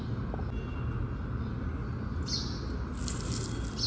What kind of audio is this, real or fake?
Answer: real